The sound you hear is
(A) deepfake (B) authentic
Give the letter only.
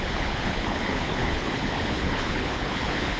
A